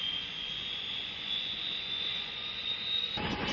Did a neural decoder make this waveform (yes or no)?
yes